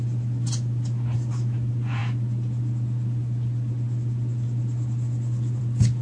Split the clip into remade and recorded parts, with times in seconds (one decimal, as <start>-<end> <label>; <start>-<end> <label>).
0.0-6.0 recorded